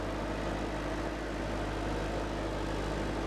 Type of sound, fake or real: real